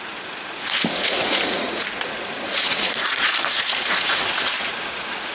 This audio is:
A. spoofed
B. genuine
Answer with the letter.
A